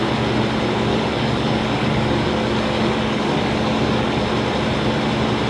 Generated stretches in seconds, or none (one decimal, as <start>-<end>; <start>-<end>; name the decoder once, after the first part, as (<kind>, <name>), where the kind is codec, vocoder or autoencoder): 0.9-4.2 (codec, DAC)